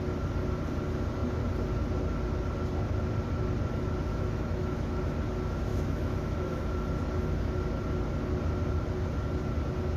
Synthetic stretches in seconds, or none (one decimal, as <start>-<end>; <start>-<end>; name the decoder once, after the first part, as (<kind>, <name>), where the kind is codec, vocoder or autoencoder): 4.1-5.0 (autoencoder, DAC-VAE); 5.7-6.6

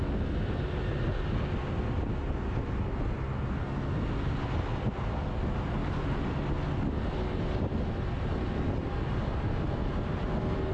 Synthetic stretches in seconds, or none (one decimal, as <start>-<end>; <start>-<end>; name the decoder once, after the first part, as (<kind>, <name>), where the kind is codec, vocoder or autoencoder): none

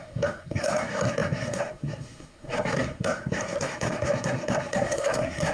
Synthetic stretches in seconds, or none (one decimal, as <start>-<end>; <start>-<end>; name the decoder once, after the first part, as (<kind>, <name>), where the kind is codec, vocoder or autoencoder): 0.0-5.5 (codec, SNAC)

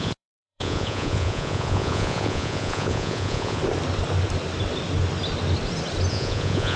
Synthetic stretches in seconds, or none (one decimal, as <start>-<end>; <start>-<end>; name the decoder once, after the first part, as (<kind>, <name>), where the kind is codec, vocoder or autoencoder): 0.0-3.6 (vocoder, Vocos); 6.1-6.8

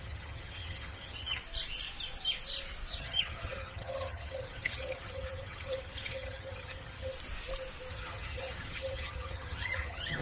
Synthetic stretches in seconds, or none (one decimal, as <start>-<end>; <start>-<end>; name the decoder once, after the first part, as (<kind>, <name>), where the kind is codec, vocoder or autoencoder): 0.0-1.4 (vocoder, HiFi-GAN); 3.0-7.1; 7.9-10.2